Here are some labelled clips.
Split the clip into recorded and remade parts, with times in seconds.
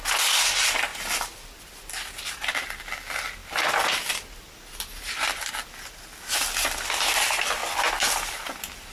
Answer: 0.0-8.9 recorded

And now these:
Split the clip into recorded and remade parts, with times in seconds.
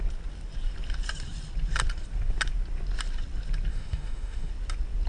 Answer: 0.0-3.7 recorded; 3.7-4.5 remade; 4.5-5.1 recorded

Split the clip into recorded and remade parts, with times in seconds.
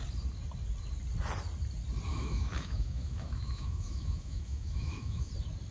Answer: 0.0-2.1 recorded; 2.1-5.3 remade; 5.3-5.7 recorded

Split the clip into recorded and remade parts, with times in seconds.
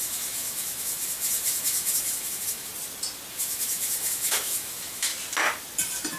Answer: 0.0-2.7 remade; 2.7-3.3 recorded; 3.3-5.1 remade; 5.1-6.2 recorded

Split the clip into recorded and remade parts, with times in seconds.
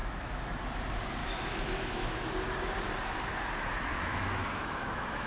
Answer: 0.0-0.6 remade; 0.6-1.2 recorded; 1.2-2.3 remade; 2.3-4.1 recorded; 4.1-5.3 remade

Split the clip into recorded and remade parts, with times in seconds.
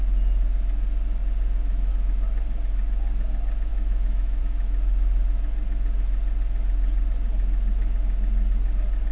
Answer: 0.0-3.7 recorded; 3.7-4.4 remade; 4.4-9.1 recorded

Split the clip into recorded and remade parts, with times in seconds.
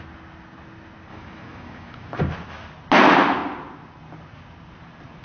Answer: 0.0-1.1 recorded; 1.1-2.2 remade; 2.2-5.2 recorded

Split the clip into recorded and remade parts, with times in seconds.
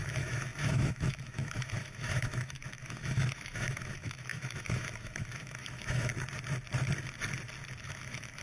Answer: 0.0-6.1 remade; 6.1-7.8 recorded; 7.8-8.4 remade